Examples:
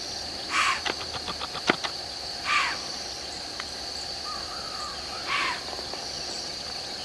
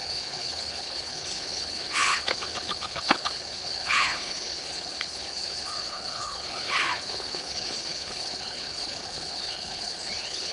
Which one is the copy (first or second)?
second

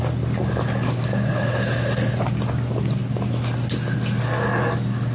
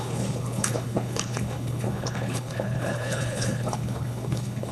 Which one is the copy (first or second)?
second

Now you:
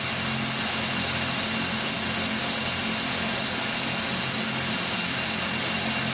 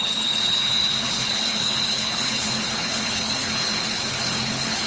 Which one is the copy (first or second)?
second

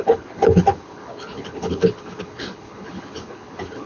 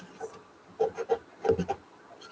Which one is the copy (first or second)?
first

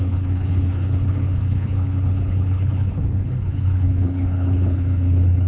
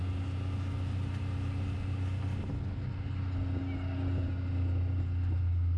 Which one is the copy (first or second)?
first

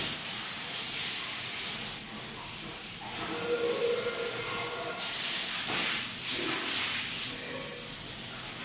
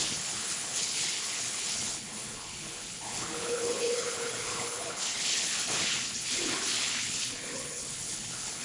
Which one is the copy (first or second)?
second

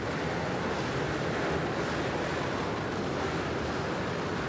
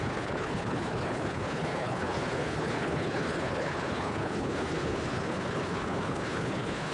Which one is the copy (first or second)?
second